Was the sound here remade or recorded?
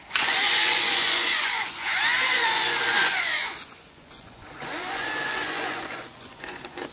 remade